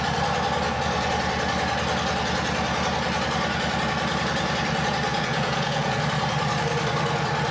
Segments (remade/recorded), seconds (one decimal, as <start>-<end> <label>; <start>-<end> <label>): 0.0-5.1 recorded; 5.1-6.0 remade; 6.0-7.5 recorded